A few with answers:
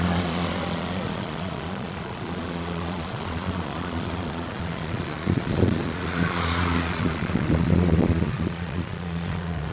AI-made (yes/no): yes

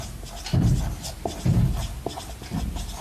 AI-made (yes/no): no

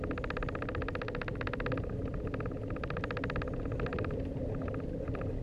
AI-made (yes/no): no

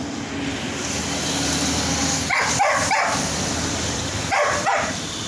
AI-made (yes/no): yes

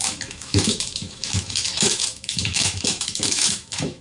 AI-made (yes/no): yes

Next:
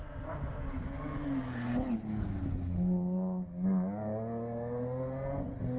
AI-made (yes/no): no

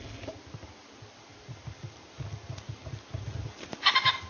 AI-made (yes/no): no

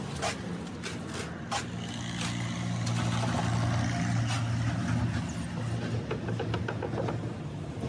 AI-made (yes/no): no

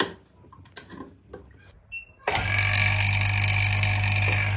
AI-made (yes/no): no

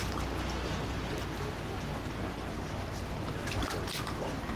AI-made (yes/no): no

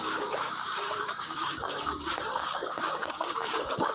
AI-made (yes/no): yes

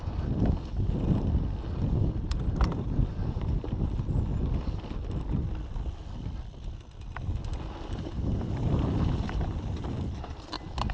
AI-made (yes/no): no